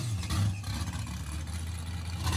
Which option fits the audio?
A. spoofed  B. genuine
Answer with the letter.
B